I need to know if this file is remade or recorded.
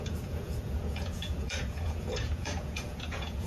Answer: remade